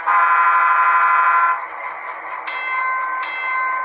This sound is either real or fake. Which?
real